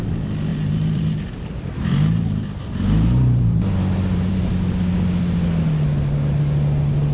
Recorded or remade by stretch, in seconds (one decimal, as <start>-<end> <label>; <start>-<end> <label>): 0.0-0.5 recorded; 0.5-4.5 remade; 4.5-7.1 recorded